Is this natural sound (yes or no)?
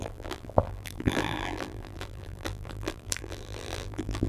no